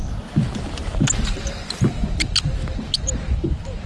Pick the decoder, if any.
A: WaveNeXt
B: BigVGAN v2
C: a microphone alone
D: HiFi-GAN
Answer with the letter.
C